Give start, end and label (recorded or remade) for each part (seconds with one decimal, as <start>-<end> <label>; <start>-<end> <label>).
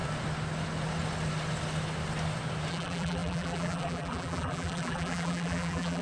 0.0-2.7 recorded; 2.7-6.0 remade